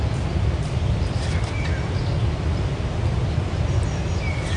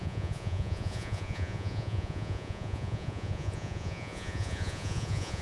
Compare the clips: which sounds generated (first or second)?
second